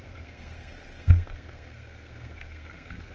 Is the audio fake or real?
fake